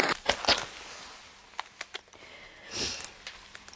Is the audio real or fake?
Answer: real